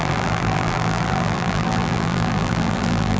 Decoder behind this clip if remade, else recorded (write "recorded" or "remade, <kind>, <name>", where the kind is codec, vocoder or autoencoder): remade, vocoder, BigVGAN v2